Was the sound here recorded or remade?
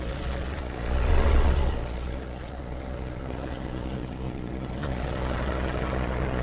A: remade